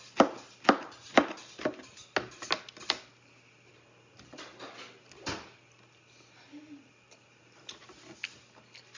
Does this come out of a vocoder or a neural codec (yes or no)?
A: no